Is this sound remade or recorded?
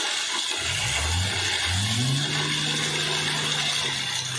recorded